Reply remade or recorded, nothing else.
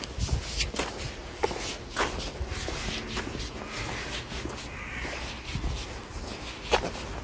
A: recorded